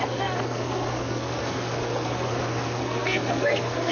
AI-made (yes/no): yes